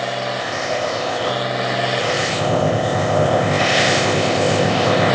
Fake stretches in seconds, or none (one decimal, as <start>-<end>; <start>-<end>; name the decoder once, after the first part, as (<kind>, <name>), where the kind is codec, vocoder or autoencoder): 0.4-1.3 (codec, ZipCodec); 2.0-5.1